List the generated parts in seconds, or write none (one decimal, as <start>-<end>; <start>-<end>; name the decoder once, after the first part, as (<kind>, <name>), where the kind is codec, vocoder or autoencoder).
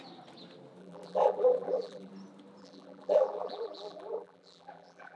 0.8-2.1 (vocoder, BigVGAN v2); 2.6-5.2